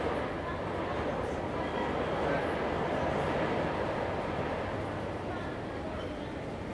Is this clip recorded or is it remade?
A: recorded